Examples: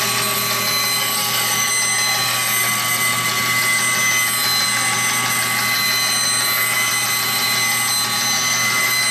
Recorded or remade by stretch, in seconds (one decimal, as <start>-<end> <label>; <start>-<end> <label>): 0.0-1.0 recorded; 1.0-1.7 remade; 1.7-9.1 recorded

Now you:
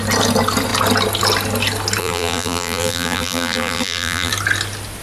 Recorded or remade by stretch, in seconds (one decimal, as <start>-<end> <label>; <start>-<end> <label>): 0.0-2.0 recorded; 2.0-4.3 remade; 4.3-5.0 recorded

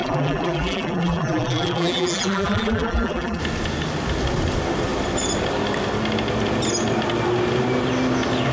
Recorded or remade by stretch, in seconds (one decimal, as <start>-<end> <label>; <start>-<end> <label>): 0.0-3.4 remade; 3.4-8.5 recorded

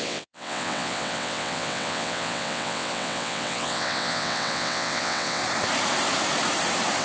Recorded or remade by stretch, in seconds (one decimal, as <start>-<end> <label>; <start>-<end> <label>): 0.0-5.4 remade; 5.4-7.0 recorded

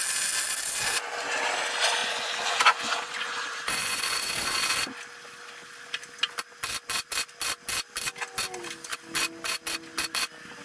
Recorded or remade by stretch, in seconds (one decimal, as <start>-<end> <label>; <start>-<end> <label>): 0.0-2.0 recorded; 2.0-4.3 remade; 4.3-10.6 recorded